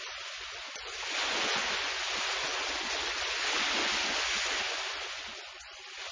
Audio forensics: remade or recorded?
remade